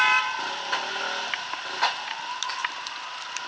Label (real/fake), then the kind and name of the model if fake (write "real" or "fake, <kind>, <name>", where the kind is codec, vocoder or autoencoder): fake, vocoder, BigVGAN v2